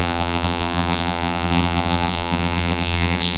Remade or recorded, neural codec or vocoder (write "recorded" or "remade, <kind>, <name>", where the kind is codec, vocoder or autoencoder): remade, vocoder, BigVGAN v2